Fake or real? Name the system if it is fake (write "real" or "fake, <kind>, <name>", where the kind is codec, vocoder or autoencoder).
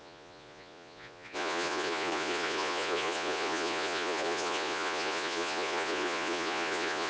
fake, vocoder, Vocos